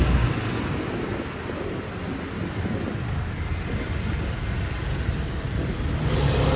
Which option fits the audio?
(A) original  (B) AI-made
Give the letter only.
A